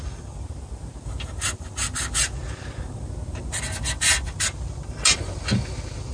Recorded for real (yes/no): yes